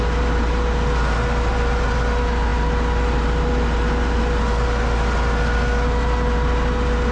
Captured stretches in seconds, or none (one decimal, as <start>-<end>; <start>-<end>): 0.0-1.5; 2.0-7.1